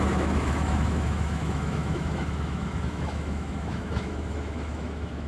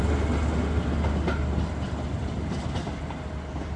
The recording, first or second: second